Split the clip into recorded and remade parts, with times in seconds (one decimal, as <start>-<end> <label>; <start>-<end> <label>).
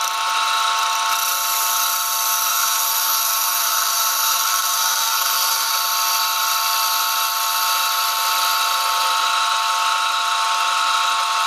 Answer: 0.0-2.5 recorded; 2.5-5.7 remade; 5.7-11.5 recorded